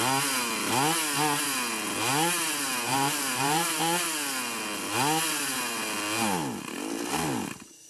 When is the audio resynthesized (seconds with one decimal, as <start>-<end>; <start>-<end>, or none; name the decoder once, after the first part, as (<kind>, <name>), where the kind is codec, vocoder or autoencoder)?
2.9-3.8 (vocoder, BigVGAN v2)